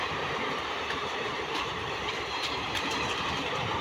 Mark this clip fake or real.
fake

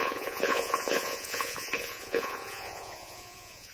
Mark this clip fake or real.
fake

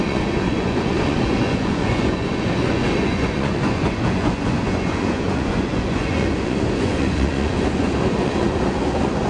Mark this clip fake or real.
fake